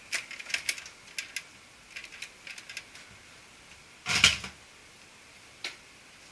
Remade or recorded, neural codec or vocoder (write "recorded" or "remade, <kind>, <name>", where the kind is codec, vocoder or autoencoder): recorded